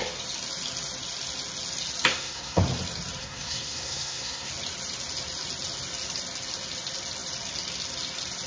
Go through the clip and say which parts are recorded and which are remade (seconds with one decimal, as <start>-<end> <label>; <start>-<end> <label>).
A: 0.0-2.1 recorded; 2.1-2.6 remade; 2.6-3.2 recorded; 3.2-4.5 remade; 4.5-8.5 recorded